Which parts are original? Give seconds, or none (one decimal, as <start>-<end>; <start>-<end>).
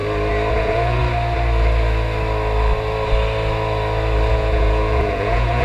0.0-0.5; 1.0-4.3